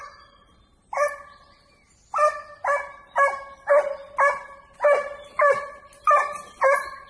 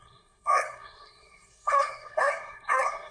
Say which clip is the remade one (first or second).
second